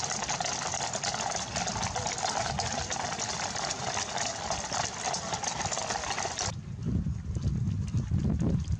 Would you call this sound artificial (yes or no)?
no